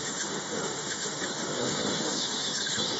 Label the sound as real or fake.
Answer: fake